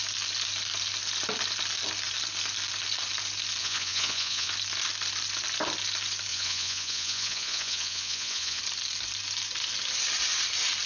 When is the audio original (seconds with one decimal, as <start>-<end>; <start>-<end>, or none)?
0.0-3.6; 4.5-6.3; 8.6-10.9